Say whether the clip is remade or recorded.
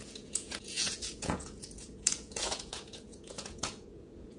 remade